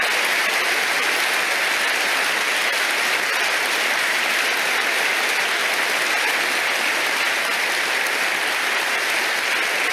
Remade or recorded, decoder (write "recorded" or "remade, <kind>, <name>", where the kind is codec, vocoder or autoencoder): recorded